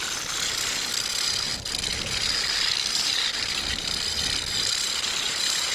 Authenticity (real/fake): real